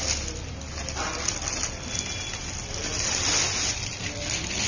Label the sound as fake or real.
real